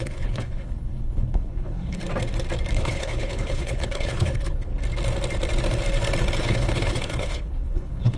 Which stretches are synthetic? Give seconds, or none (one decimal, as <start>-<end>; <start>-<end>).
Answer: 0.0-2.0; 2.7-4.7; 6.4-8.2